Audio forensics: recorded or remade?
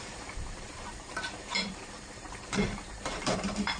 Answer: remade